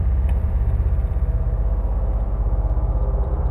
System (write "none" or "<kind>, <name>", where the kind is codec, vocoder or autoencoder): vocoder, BigVGAN v2